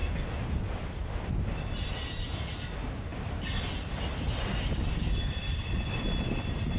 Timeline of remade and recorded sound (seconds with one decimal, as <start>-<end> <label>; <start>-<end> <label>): 0.0-6.8 recorded